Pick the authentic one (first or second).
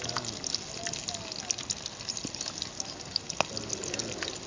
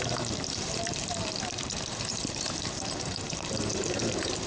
first